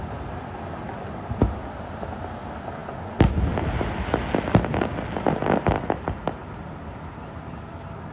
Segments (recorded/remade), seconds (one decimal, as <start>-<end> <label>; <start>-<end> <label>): 0.0-8.1 recorded